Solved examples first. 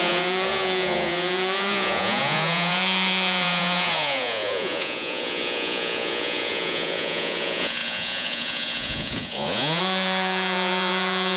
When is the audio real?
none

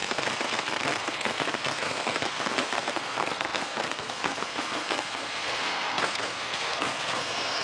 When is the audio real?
none

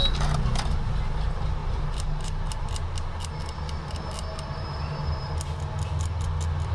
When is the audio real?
0.0-1.6; 2.6-6.7

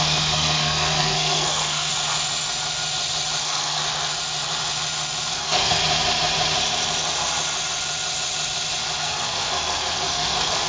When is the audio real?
1.9-3.4; 3.8-5.3; 5.8-9.0

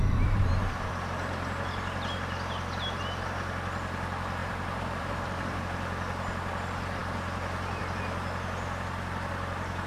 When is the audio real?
0.9-4.4; 5.6-9.9